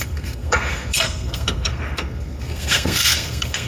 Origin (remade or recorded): remade